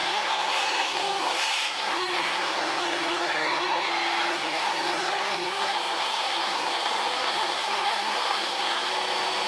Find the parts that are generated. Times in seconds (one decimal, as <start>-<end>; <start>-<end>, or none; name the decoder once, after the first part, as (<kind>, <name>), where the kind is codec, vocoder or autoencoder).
0.0-3.9 (codec, SNAC); 4.3-8.9